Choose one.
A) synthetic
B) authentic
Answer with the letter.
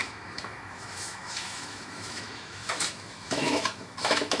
A